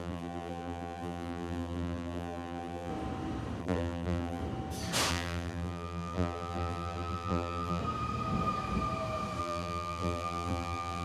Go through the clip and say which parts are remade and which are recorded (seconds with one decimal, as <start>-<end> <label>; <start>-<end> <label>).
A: 0.0-2.9 remade; 2.9-3.6 recorded; 3.6-4.4 remade; 4.4-5.1 recorded; 5.1-7.8 remade; 7.8-9.4 recorded; 9.4-11.0 remade